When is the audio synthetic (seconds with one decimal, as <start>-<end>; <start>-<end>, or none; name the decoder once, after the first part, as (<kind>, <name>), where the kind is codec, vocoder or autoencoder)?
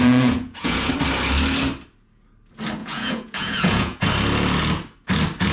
0.0-0.9 (vocoder, Vocos); 2.8-4.0